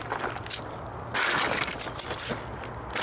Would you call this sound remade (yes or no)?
no